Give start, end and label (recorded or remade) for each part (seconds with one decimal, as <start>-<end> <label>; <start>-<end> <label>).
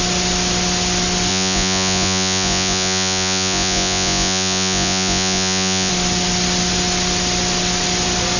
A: 0.0-1.3 recorded; 1.3-5.9 remade; 5.9-8.4 recorded